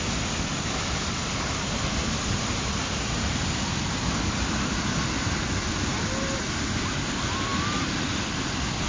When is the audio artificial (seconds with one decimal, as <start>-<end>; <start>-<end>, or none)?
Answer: none